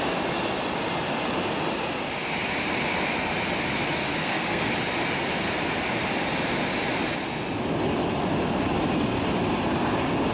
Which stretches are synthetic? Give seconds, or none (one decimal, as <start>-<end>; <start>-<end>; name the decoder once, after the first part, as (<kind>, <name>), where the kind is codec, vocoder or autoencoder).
4.2-4.7 (codec, SNAC)